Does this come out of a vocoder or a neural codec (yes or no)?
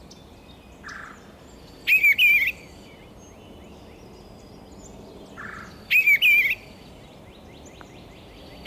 no